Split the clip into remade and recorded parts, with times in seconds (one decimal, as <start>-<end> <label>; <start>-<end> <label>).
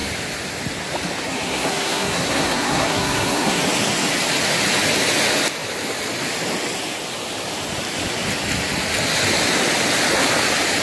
0.0-1.2 recorded; 1.2-3.6 remade; 3.6-10.8 recorded